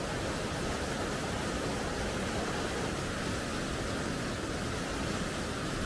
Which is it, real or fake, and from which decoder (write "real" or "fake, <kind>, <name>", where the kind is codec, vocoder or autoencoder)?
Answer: real